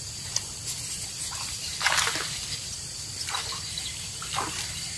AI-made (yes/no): no